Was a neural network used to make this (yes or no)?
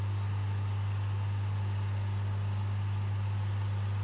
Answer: no